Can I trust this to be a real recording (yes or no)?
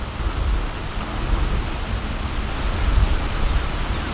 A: yes